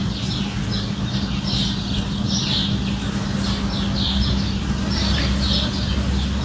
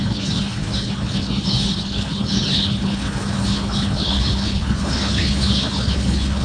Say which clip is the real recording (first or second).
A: first